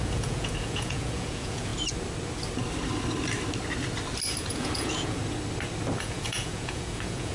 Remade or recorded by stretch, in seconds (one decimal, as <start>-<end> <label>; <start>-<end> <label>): 0.0-1.7 remade; 1.7-4.4 recorded; 4.4-5.2 remade; 5.2-6.0 recorded; 6.0-7.3 remade

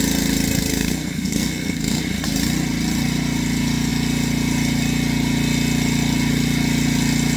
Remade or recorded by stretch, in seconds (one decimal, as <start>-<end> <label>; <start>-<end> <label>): 0.0-0.7 recorded; 0.7-2.0 remade; 2.0-7.4 recorded

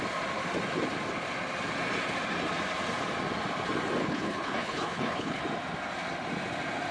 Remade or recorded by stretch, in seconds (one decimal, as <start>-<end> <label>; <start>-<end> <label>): 0.0-4.0 recorded; 4.0-5.4 remade; 5.4-6.9 recorded